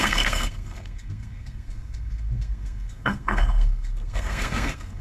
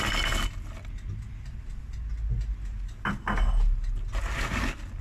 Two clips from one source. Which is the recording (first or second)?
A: second